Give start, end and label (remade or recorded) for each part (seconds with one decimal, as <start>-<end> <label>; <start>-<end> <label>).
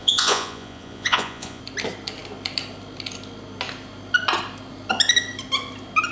0.0-1.6 remade; 1.6-6.1 recorded